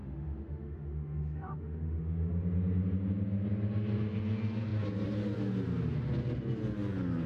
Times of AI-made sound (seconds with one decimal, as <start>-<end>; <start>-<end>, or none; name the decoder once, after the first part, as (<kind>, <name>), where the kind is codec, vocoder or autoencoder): 0.0-2.3 (autoencoder, DAC-VAE)